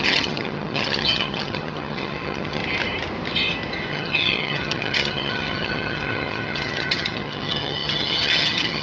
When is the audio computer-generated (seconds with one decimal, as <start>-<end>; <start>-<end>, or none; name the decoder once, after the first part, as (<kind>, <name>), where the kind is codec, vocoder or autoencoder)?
0.0-2.6 (vocoder, HiFi-GAN); 3.9-8.8